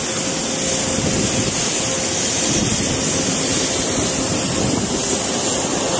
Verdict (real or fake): real